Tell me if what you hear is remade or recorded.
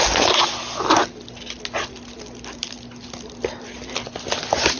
recorded